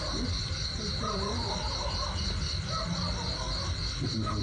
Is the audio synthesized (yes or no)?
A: no